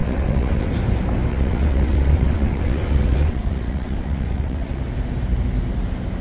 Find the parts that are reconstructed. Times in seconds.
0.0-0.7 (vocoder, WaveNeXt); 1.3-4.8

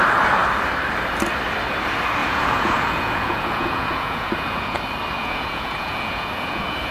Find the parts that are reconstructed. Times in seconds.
2.2-4.8 (vocoder, Vocos); 5.2-6.9

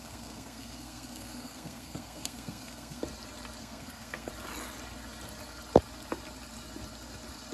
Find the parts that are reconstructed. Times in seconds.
0.0-3.0 (codec, SNAC); 3.6-4.3

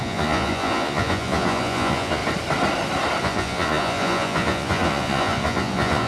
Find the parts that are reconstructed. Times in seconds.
0.0-2.2 (vocoder, Vocos); 3.2-6.1